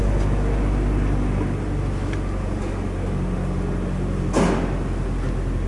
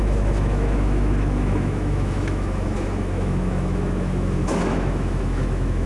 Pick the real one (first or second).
first